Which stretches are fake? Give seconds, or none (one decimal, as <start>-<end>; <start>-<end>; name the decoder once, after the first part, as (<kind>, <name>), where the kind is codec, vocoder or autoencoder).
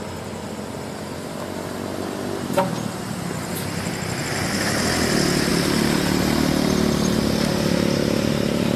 5.5-8.3 (vocoder, BigVGAN v2)